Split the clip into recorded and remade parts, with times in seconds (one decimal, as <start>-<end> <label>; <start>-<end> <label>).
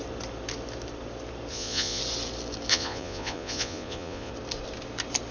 0.0-1.5 recorded; 1.5-2.0 remade; 2.0-2.7 recorded; 2.7-4.3 remade; 4.3-5.3 recorded